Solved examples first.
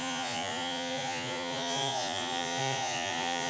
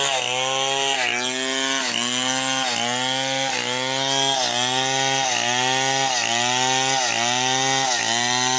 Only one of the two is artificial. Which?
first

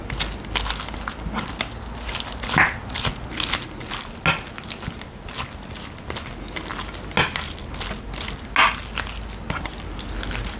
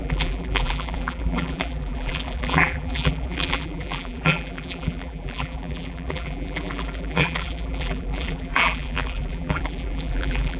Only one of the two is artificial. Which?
second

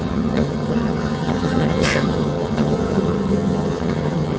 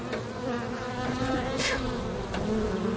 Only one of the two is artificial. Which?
first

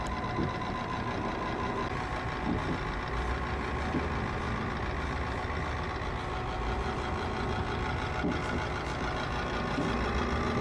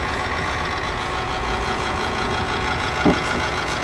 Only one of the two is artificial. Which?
second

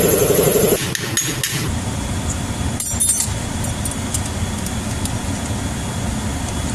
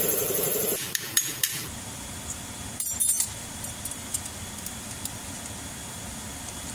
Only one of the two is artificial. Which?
second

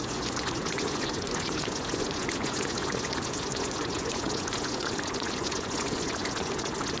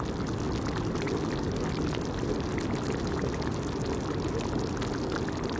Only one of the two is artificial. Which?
first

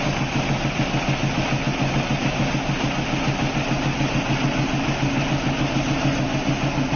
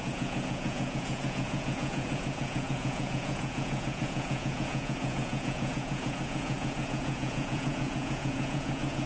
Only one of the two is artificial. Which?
second